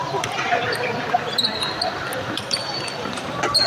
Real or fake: real